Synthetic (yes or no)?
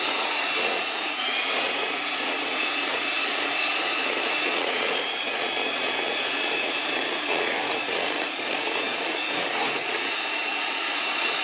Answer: yes